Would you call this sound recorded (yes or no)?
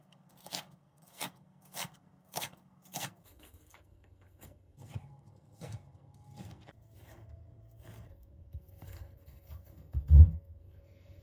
no